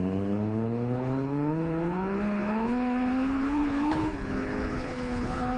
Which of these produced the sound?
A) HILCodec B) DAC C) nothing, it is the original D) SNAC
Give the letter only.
A